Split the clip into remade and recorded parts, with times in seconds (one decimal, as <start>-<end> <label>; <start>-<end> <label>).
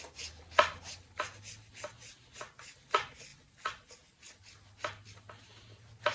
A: 0.0-6.1 recorded